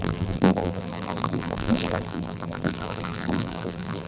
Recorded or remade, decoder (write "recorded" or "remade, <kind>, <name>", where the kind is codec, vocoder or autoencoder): remade, vocoder, BigVGAN v2